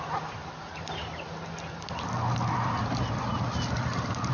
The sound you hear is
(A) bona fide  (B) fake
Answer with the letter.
A